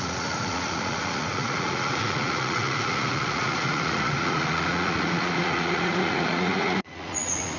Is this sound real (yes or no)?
no